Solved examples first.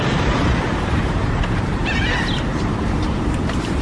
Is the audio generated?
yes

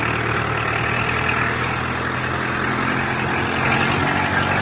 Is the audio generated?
no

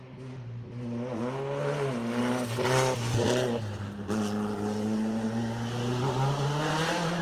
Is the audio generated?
no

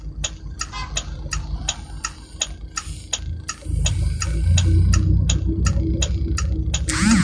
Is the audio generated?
no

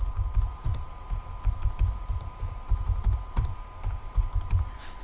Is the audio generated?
yes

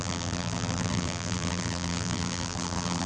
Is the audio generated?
yes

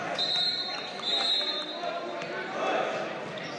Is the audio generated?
no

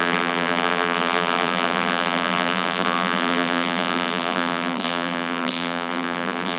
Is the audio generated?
yes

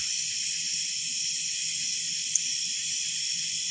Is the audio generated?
no